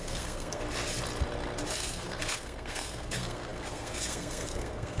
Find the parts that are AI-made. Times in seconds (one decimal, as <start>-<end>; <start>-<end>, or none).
0.0-0.6; 1.7-5.0